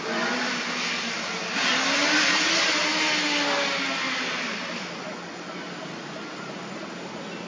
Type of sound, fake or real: real